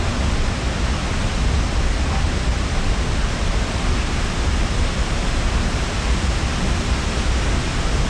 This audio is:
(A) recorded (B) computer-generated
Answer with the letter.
A